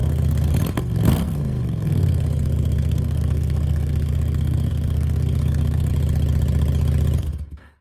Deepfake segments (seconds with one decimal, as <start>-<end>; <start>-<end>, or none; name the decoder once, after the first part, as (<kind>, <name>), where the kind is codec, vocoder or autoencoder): 0.0-5.9 (codec, SNAC); 7.2-7.8